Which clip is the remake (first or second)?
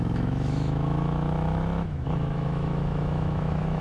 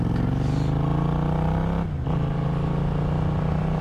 first